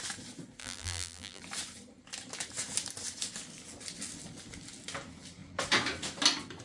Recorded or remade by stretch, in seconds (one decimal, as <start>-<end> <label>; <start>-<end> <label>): 0.0-0.6 recorded; 0.6-1.4 remade; 1.4-6.6 recorded